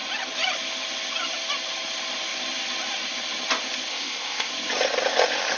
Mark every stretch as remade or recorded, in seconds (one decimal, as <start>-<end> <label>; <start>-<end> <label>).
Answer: 0.0-3.9 recorded; 3.9-4.5 remade; 4.5-5.6 recorded